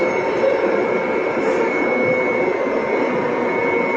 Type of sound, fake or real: real